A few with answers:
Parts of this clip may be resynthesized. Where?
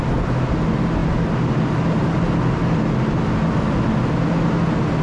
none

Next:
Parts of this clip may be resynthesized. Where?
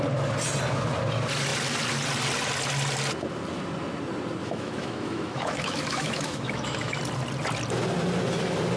4.4-6.9 (autoencoder, DAC-VAE)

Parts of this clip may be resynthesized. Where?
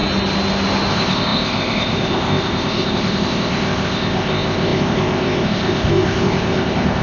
0.9-7.0 (codec, ZipCodec)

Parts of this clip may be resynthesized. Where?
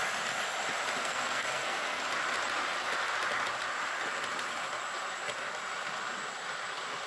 1.0-2.0 (codec, SNAC)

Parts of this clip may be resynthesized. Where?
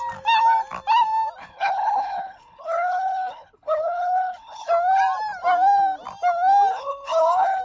1.4-4.7 (codec, HILCodec); 6.7-7.6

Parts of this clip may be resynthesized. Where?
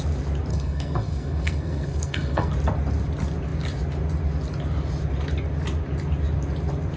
0.5-2.5 (codec, SNAC)